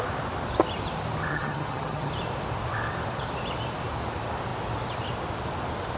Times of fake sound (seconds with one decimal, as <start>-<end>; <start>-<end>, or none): 1.3-2.1